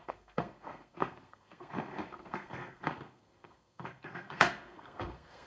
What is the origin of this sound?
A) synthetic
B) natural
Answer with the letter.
A